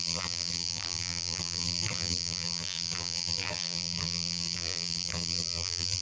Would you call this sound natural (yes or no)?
no